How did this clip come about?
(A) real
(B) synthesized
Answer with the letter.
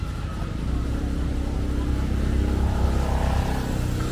A